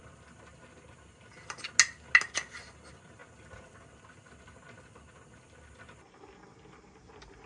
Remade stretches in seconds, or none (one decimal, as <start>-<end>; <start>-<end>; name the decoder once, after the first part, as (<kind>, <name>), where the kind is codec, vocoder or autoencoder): none